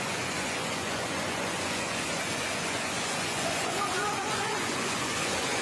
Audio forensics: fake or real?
fake